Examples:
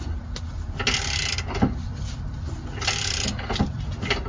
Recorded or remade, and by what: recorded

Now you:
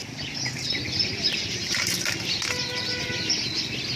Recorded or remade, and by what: recorded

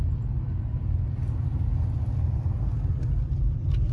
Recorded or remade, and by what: recorded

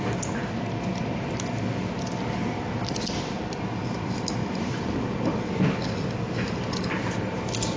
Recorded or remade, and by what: recorded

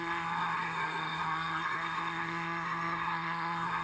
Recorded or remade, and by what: remade, codec, SNAC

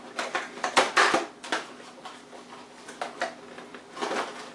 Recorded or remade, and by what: recorded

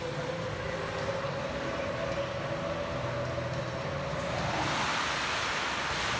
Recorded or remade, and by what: recorded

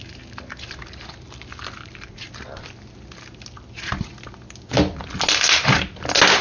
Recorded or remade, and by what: recorded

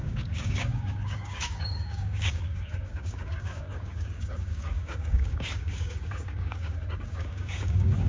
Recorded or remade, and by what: remade, codec, DAC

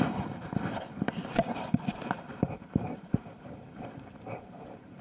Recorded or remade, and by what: remade, vocoder, BigVGAN v2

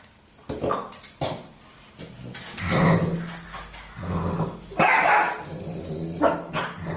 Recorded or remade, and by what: recorded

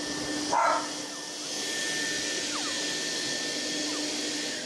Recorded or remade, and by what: recorded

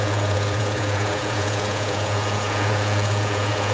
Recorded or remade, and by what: remade, vocoder, Vocos